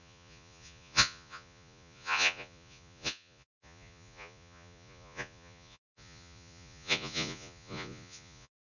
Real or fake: fake